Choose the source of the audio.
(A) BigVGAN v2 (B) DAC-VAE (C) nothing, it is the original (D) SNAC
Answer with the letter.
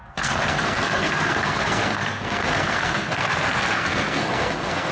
D